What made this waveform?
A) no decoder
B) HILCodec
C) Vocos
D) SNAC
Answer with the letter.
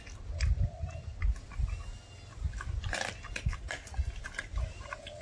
A